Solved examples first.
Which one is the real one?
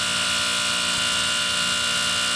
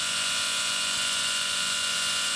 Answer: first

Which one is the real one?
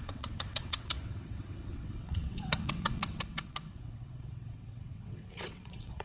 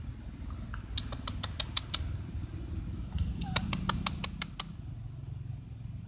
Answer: second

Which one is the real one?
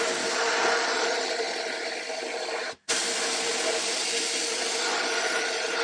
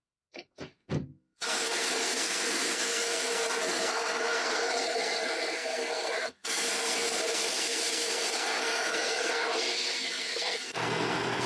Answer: first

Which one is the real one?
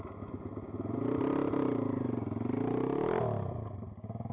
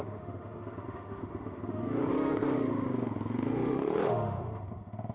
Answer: first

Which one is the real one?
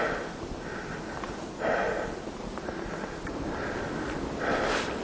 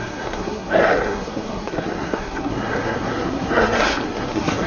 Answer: first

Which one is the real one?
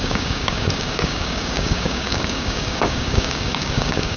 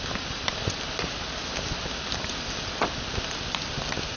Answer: second